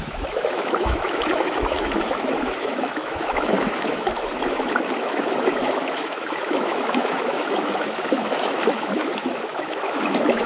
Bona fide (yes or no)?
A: no